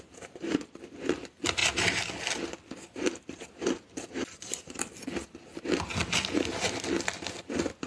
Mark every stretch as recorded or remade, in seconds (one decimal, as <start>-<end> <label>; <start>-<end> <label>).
0.0-7.9 recorded